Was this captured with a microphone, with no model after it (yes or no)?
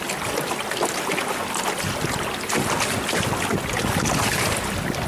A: yes